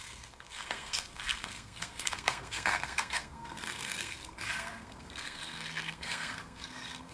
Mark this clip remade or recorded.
remade